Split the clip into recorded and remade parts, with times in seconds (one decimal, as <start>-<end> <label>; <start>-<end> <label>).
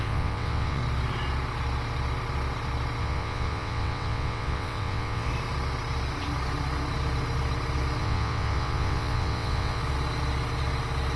0.0-0.8 remade; 0.8-3.0 recorded; 3.0-5.3 remade; 5.3-8.0 recorded; 8.0-9.8 remade; 9.8-11.2 recorded